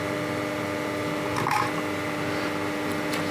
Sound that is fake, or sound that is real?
real